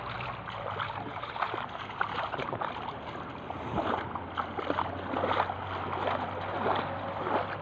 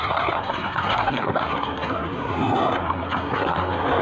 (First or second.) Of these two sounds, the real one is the first